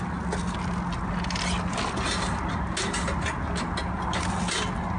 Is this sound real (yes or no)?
yes